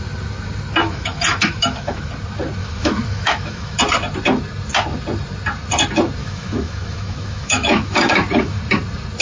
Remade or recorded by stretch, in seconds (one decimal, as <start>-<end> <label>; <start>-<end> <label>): 0.0-0.8 recorded; 0.8-2.1 remade; 2.1-2.6 recorded; 2.6-3.8 remade; 3.8-6.2 recorded; 6.2-8.6 remade; 8.6-9.2 recorded

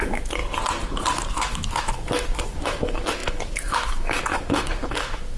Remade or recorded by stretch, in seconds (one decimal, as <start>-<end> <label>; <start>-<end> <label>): 0.0-0.4 remade; 0.4-1.3 recorded; 1.3-5.4 remade

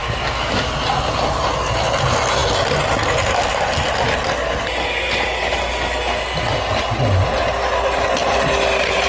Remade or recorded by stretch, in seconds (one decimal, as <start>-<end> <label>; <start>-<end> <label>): 0.0-0.6 remade; 0.6-9.1 recorded

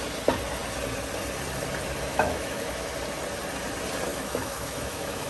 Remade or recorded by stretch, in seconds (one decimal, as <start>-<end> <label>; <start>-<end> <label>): 0.0-2.1 recorded; 2.1-2.9 remade; 2.9-4.1 recorded; 4.1-5.3 remade